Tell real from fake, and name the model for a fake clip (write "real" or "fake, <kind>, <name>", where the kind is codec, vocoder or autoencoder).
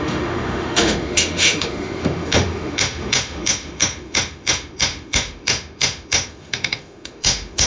fake, autoencoder, DAC-VAE